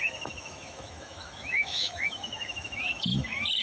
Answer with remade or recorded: remade